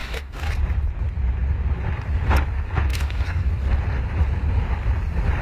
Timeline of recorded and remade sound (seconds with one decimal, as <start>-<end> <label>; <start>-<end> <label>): 0.0-0.5 remade; 0.5-2.9 recorded; 2.9-3.5 remade; 3.5-5.4 recorded